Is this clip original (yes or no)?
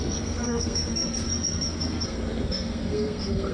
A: no